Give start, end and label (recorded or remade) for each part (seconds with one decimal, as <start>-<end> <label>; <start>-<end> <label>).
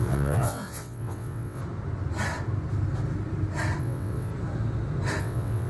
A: 0.0-1.6 remade; 1.6-3.8 recorded; 3.8-4.3 remade; 4.3-5.2 recorded; 5.2-5.7 remade